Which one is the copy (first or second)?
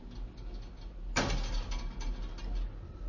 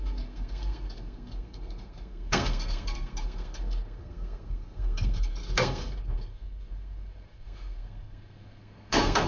second